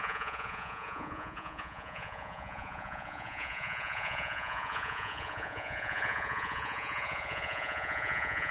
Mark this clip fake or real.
fake